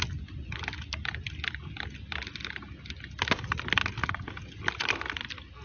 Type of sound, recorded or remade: recorded